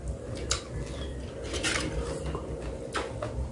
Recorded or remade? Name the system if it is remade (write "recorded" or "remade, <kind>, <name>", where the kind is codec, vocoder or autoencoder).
recorded